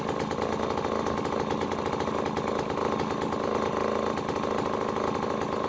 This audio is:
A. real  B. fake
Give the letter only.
A